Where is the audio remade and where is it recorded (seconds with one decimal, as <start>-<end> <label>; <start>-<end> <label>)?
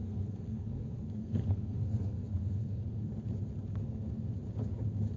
0.0-3.1 remade; 3.1-3.7 recorded; 3.7-4.3 remade; 4.3-5.2 recorded